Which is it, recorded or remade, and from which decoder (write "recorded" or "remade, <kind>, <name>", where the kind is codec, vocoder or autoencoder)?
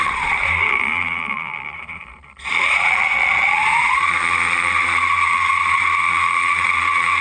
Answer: remade, vocoder, Vocos